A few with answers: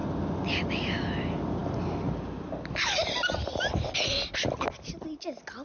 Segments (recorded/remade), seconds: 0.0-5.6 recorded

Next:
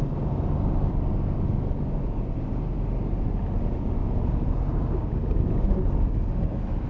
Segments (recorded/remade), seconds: 0.0-6.9 recorded

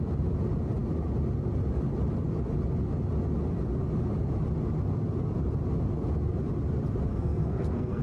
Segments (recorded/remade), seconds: 0.0-7.1 recorded; 7.1-8.0 remade

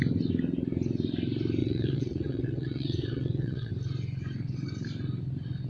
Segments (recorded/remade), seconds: 0.0-1.6 recorded; 1.6-3.7 remade; 3.7-5.7 recorded

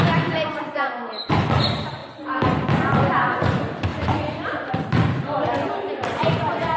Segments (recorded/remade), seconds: 0.0-6.8 recorded

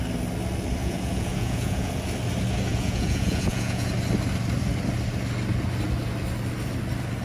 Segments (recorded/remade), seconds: 0.0-0.8 recorded; 0.8-1.9 remade; 1.9-2.7 recorded; 2.7-3.9 remade; 3.9-7.2 recorded

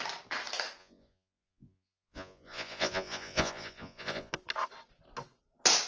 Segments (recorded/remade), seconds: 0.0-0.8 recorded; 0.8-4.3 remade; 4.3-5.9 recorded